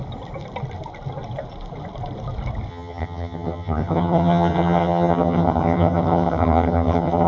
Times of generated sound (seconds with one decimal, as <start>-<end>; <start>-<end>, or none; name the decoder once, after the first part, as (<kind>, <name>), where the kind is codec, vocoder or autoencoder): 2.7-7.3 (vocoder, HiFi-GAN)